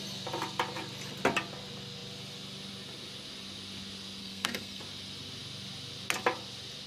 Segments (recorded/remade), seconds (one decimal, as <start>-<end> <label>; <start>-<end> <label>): 0.0-4.2 recorded; 4.2-4.8 remade; 4.8-6.9 recorded